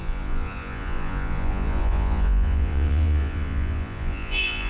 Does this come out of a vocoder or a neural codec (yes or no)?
yes